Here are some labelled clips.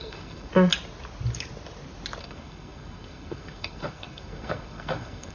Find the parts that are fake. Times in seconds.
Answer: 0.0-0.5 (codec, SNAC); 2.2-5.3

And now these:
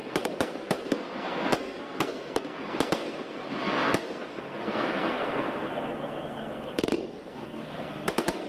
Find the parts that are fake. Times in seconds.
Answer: 0.0-8.5 (codec, SNAC)